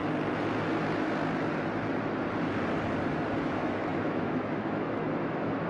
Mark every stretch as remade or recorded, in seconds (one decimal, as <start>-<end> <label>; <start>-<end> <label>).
0.0-3.4 recorded; 3.4-5.7 remade